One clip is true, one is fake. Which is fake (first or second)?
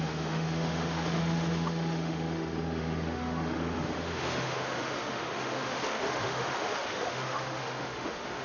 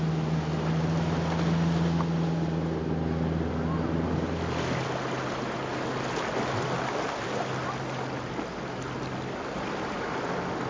first